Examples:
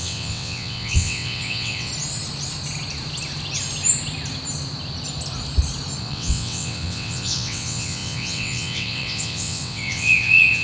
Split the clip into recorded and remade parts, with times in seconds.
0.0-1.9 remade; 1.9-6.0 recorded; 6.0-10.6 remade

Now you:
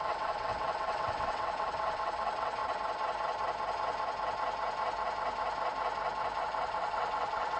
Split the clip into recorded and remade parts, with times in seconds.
0.0-2.6 remade; 2.6-6.4 recorded; 6.4-7.6 remade

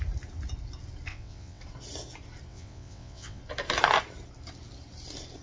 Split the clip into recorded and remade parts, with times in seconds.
0.0-1.1 recorded; 1.1-1.6 remade; 1.6-2.5 recorded; 2.5-3.4 remade; 3.4-5.4 recorded

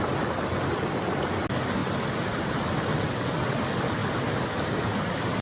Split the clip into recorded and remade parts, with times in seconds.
0.0-2.9 recorded; 2.9-3.6 remade; 3.6-5.4 recorded

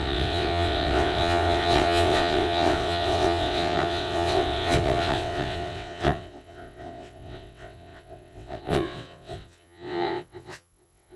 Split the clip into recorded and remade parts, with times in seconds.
0.0-11.2 remade